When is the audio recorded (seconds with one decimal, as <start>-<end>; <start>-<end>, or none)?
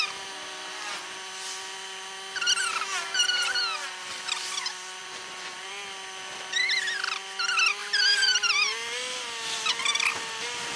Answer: 0.0-5.0; 5.7-10.8